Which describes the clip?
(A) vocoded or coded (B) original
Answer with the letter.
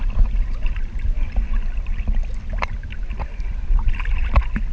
B